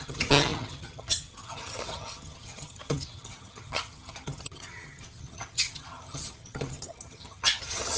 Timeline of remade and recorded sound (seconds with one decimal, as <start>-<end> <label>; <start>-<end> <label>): 0.0-8.0 remade